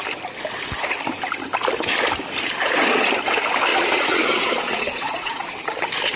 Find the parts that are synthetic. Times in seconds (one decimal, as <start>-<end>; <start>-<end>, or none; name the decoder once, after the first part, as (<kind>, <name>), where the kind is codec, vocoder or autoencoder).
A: 3.7-5.5 (vocoder, Vocos)